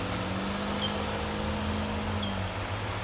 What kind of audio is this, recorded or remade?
recorded